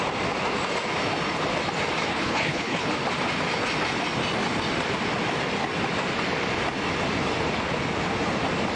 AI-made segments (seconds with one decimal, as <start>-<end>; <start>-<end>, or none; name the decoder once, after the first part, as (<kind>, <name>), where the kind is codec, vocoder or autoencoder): 2.1-2.9 (codec, HILCodec)